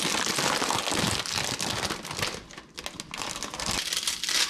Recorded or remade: recorded